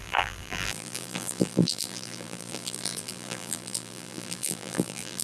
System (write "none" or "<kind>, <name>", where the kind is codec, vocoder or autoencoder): vocoder, BigVGAN v2